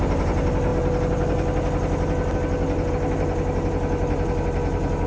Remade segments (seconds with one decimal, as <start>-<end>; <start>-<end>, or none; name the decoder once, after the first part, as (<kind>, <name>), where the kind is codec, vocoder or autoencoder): none